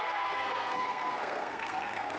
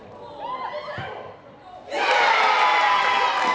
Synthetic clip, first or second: first